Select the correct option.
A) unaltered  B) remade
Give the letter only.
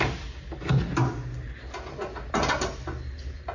A